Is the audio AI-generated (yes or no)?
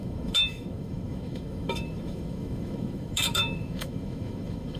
yes